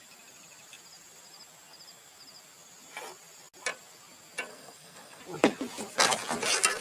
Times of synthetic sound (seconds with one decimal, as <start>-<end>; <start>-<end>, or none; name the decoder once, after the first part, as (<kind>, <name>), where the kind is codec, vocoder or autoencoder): 4.5-5.2 (codec, SNAC)